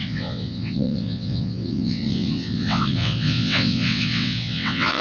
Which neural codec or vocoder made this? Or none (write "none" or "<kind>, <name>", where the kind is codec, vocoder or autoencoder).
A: vocoder, WaveNeXt